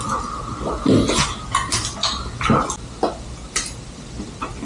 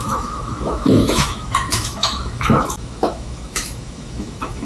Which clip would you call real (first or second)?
first